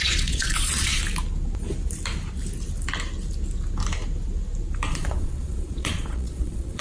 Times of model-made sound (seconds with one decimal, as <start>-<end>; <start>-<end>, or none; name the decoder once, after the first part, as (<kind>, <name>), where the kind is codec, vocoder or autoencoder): 0.0-1.0 (vocoder, Vocos); 4.9-6.8